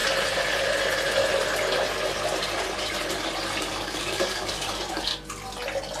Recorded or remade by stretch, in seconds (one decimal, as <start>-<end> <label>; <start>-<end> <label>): 0.0-3.6 recorded; 3.6-5.1 remade; 5.1-6.0 recorded